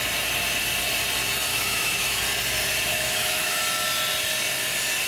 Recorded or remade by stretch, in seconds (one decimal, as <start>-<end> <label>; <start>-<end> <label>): 0.0-1.5 recorded; 1.5-2.2 remade; 2.2-2.9 recorded; 2.9-3.6 remade; 3.6-5.1 recorded